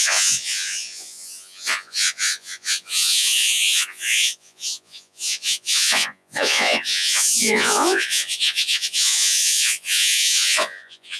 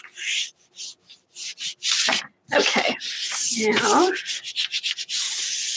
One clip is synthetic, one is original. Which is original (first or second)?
second